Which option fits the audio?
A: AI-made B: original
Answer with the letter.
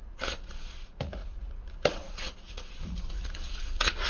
A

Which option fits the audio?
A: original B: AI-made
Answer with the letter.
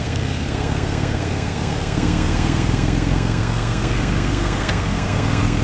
B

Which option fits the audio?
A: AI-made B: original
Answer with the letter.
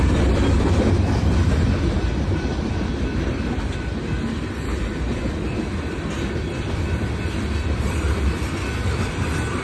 B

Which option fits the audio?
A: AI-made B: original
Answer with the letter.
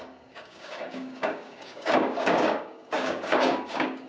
A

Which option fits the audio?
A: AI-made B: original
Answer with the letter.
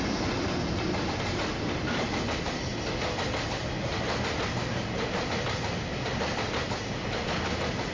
B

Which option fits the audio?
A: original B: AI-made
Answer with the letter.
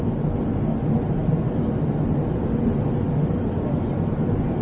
A